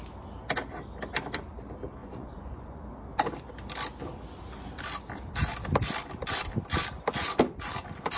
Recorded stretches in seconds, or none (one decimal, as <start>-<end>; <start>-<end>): 0.0-2.0; 2.8-8.2